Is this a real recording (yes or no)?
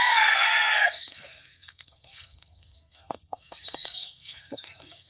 no